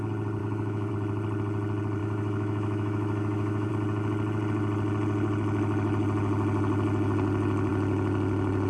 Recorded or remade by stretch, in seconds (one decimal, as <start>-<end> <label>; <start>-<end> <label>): 0.0-0.4 recorded; 0.4-0.9 remade; 0.9-2.0 recorded; 2.0-3.7 remade; 3.7-8.7 recorded